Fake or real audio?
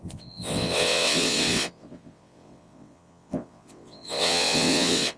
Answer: fake